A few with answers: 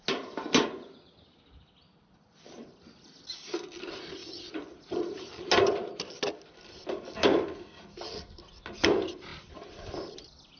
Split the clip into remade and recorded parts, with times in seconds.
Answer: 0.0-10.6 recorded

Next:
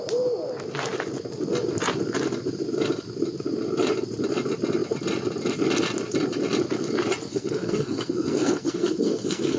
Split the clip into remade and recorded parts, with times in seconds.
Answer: 0.0-7.3 recorded; 7.3-9.6 remade

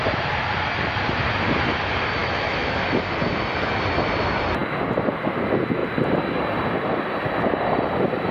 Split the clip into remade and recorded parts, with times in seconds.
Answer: 0.0-2.2 recorded; 2.2-2.8 remade; 2.8-8.3 recorded